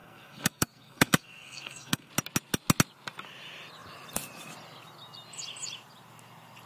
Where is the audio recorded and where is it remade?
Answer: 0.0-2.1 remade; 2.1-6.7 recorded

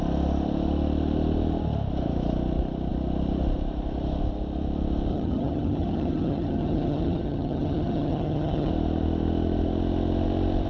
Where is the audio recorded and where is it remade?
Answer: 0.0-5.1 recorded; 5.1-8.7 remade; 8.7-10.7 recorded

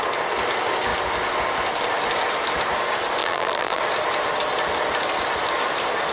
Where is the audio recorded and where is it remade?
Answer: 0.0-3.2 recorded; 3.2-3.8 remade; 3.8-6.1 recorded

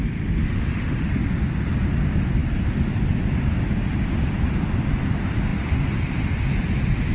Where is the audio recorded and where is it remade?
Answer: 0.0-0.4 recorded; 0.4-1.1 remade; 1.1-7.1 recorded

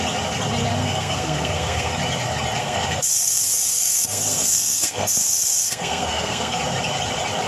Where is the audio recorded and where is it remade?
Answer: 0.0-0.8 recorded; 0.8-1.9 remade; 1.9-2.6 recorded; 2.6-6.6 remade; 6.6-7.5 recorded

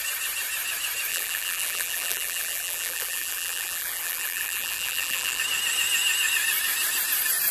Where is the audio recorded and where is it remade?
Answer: 0.0-1.1 recorded; 1.1-5.4 remade; 5.4-7.5 recorded

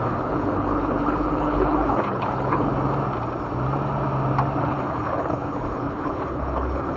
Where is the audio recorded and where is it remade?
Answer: 0.0-2.7 remade; 2.7-4.6 recorded; 4.6-7.0 remade

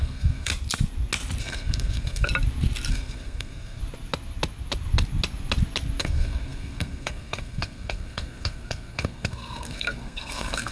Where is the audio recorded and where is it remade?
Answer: 0.0-0.5 remade; 0.5-1.4 recorded; 1.4-2.3 remade; 2.3-2.9 recorded; 2.9-3.8 remade; 3.8-6.0 recorded; 6.0-10.7 remade